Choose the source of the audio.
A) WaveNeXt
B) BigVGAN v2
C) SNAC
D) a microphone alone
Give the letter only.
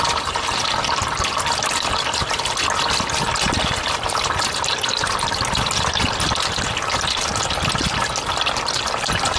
D